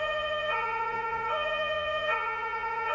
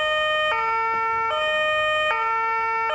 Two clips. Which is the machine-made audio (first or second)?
first